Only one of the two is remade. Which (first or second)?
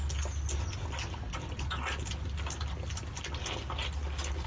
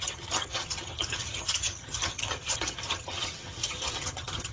second